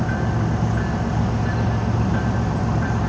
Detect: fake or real real